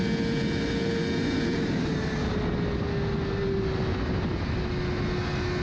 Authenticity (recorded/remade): recorded